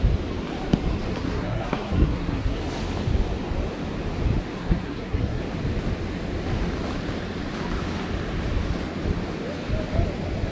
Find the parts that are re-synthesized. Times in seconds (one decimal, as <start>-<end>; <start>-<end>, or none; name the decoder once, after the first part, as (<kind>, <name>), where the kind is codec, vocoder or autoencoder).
1.1-2.6 (codec, SNAC); 4.6-5.4